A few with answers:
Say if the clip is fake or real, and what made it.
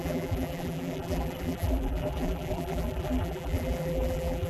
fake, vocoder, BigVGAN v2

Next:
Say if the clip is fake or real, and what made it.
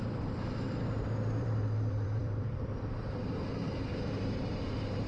fake, vocoder, BigVGAN v2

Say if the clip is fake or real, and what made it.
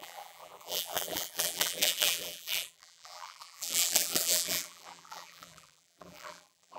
fake, vocoder, BigVGAN v2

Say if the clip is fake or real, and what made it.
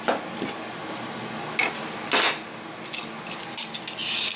real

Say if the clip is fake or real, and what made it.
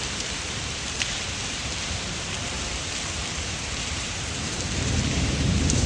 fake, vocoder, BigVGAN v2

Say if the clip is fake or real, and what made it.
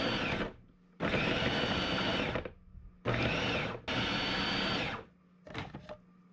real